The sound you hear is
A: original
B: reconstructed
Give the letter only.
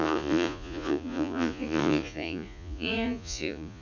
B